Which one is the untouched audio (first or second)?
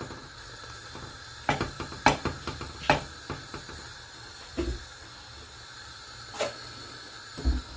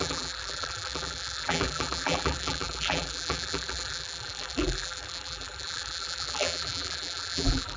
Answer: first